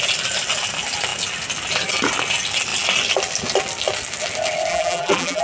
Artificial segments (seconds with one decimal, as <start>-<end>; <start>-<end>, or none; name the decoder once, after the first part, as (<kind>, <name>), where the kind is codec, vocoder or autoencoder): 4.7-5.4 (vocoder, BigVGAN v2)